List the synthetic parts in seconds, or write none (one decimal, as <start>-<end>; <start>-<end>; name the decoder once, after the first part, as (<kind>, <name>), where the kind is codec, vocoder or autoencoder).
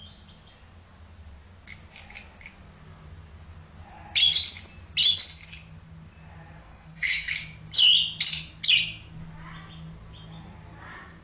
6.6-7.3 (codec, SNAC)